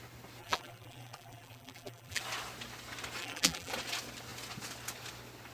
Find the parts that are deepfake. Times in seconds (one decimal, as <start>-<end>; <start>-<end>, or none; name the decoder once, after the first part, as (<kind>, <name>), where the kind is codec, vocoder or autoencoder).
0.4-2.2 (vocoder, BigVGAN v2); 3.2-3.7